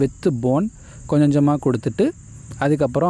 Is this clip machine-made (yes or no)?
no